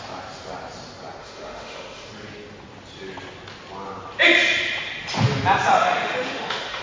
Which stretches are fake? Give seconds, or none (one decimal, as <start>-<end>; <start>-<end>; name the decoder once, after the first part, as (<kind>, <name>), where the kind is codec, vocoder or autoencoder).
1.2-2.1 (autoencoder, DAC-VAE); 5.7-6.8